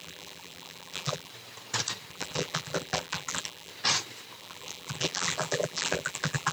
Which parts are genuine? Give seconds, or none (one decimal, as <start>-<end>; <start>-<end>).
1.3-2.1; 3.7-4.4